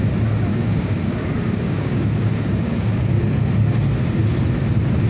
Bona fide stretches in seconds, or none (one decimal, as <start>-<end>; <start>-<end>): 0.0-0.5; 3.1-5.1